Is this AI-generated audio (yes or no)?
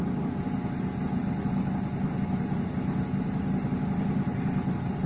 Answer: no